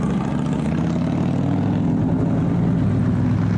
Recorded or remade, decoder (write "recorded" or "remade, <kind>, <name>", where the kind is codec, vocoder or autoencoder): recorded